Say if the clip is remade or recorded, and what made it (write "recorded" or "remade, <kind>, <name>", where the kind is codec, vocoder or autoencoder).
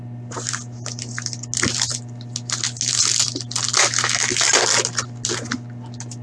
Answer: recorded